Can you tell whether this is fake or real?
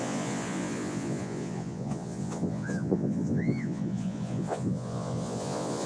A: fake